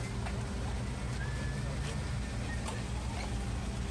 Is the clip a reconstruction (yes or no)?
no